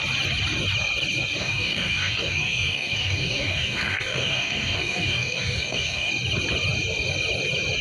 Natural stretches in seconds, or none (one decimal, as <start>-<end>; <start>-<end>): 0.0-1.4; 6.1-7.8